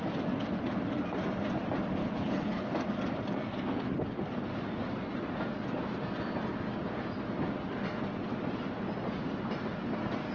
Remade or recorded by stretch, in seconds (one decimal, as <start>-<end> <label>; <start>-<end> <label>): 0.0-2.0 recorded; 2.0-2.7 remade; 2.7-10.3 recorded